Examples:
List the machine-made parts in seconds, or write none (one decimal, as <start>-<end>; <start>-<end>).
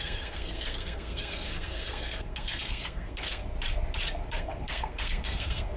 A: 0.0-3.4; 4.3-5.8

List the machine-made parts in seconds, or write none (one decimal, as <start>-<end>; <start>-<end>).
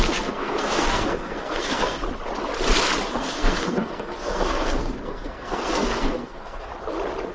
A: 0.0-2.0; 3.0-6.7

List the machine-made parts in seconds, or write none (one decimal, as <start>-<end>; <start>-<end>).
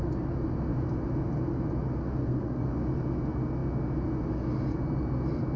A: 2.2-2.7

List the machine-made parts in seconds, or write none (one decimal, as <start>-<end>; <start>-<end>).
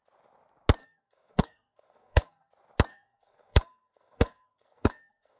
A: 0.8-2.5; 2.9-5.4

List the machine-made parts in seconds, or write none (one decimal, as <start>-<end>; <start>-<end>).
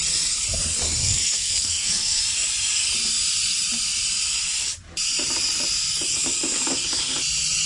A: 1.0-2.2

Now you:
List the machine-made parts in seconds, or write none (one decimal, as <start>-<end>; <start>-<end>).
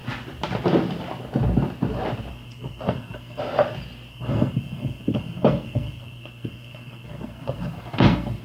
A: 2.3-3.4; 4.1-8.4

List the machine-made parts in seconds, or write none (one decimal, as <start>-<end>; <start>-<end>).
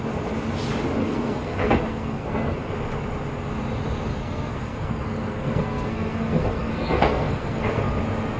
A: 1.0-2.7; 4.1-7.9